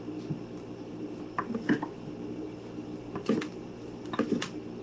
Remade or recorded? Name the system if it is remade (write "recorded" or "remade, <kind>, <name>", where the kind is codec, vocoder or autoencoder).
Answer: recorded